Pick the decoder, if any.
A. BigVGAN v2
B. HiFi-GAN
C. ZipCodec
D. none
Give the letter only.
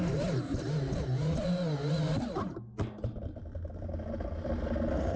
D